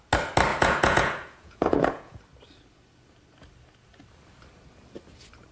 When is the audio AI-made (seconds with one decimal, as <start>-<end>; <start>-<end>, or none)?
0.5-2.2